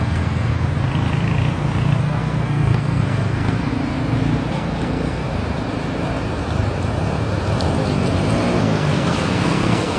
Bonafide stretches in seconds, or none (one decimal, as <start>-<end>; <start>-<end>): 0.5-2.0; 3.7-4.5; 5.2-8.6